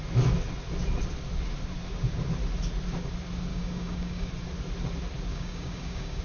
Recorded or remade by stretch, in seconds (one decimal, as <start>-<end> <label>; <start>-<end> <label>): 0.0-3.5 recorded; 3.5-4.3 remade; 4.3-5.3 recorded; 5.3-6.2 remade